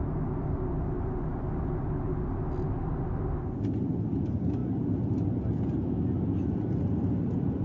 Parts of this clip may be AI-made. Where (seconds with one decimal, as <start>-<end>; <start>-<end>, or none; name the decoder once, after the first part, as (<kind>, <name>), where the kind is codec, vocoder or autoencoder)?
none